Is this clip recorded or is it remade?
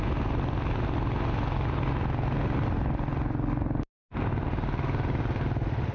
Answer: recorded